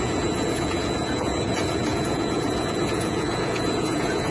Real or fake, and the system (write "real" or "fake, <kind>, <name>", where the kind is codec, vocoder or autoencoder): fake, vocoder, Vocos